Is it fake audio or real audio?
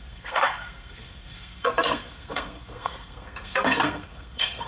fake